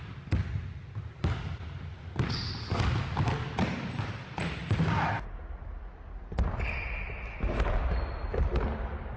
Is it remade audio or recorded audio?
recorded